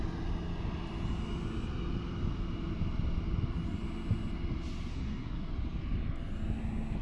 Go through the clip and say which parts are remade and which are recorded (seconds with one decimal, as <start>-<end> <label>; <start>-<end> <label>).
0.0-4.9 recorded; 4.9-5.5 remade; 5.5-7.0 recorded